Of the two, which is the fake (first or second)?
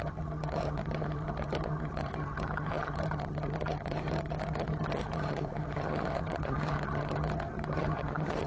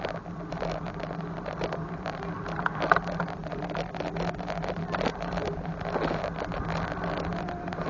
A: first